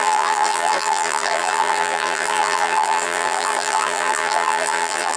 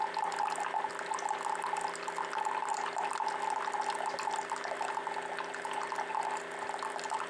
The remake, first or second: first